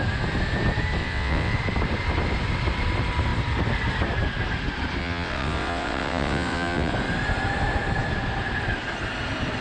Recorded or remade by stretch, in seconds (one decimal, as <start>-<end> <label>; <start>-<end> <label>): 0.0-1.0 recorded; 1.0-1.5 remade; 1.5-5.0 recorded; 5.0-6.9 remade; 6.9-9.6 recorded